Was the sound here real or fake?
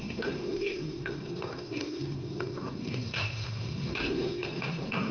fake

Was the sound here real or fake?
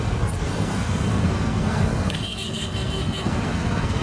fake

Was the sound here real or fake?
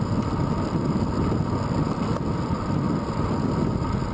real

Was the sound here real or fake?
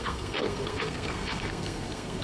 fake